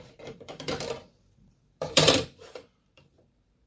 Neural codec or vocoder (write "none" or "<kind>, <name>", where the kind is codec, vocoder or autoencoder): vocoder, BigVGAN v2